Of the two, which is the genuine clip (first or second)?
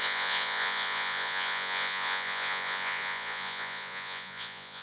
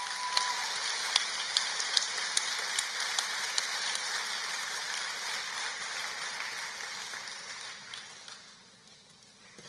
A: second